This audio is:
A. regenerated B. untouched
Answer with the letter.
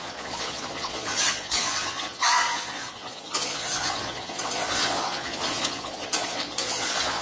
A